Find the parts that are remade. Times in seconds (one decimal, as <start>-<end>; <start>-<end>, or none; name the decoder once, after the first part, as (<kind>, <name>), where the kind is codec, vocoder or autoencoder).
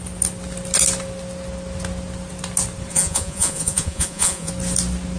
2.9-4.5 (vocoder, Vocos)